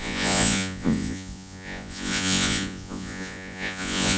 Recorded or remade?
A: remade